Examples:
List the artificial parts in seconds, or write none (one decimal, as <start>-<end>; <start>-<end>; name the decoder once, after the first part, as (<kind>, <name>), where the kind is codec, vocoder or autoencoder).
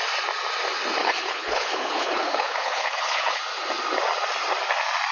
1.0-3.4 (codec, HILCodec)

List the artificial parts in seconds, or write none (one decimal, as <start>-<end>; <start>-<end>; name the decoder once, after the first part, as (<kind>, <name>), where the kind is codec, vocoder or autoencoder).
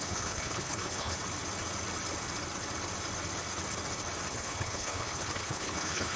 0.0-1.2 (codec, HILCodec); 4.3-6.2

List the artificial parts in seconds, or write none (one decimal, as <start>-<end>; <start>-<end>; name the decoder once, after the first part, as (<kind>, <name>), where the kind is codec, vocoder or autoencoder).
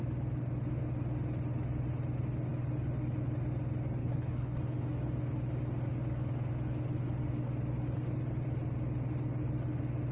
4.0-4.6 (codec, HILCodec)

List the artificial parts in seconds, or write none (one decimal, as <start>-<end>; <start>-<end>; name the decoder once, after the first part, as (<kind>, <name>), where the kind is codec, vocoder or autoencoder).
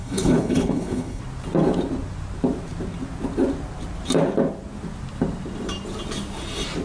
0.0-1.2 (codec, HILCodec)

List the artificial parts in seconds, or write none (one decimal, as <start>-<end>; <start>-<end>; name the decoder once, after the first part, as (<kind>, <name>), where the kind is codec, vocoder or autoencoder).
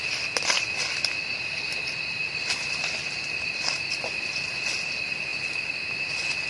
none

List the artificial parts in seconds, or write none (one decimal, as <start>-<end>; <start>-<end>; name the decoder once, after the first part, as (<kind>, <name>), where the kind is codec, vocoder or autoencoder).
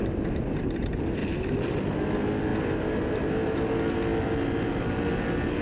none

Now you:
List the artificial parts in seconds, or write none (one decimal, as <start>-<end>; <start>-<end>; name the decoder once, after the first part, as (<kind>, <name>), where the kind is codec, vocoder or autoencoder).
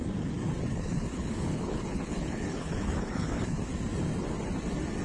0.7-3.7 (codec, HILCodec)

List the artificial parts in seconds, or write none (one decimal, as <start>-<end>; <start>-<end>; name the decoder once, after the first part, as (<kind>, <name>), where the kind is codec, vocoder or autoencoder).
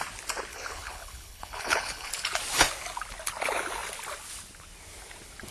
0.5-2.1 (codec, HILCodec)